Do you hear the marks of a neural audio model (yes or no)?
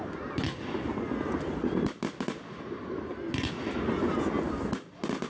no